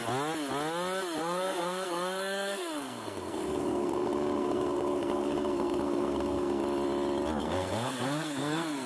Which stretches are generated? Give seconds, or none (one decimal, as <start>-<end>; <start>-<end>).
1.2-6.6; 7.4-8.9